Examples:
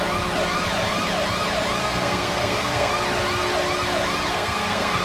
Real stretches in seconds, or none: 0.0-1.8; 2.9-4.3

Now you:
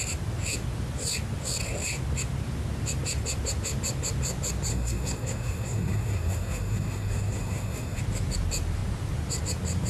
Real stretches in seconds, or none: 0.0-4.7; 8.0-9.9

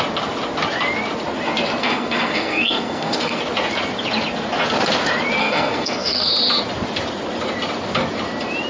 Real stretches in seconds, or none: 0.0-1.8; 3.4-5.4; 6.3-8.7

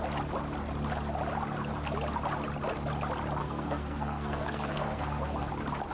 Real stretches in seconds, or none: 0.0-3.4; 5.5-5.9

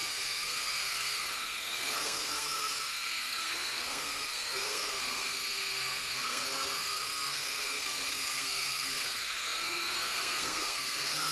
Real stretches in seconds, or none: none

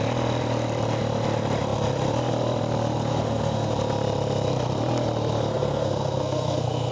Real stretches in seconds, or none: 0.0-3.1; 3.7-5.5

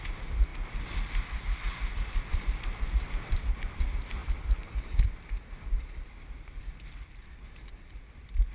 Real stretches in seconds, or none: 0.0-8.5